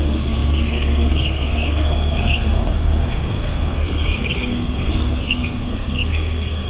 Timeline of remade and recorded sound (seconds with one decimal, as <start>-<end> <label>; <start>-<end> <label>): 0.0-6.7 remade